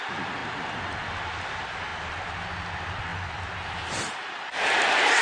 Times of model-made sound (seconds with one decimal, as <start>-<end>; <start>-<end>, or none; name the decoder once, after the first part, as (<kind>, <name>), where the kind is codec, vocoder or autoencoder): 0.0-0.4 (vocoder, BigVGAN v2); 1.5-1.9; 2.6-3.1; 3.7-5.2